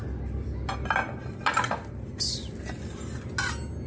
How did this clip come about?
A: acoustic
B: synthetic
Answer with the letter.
A